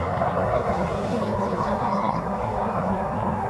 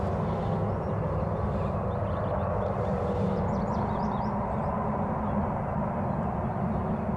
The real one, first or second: second